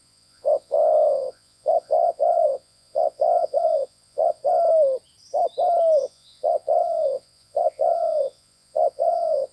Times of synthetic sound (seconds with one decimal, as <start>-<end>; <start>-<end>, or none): 0.0-4.4; 6.0-9.5